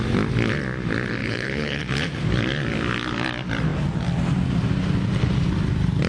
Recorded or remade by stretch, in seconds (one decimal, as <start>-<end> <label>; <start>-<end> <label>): 0.0-1.2 recorded; 1.2-1.9 remade; 1.9-6.1 recorded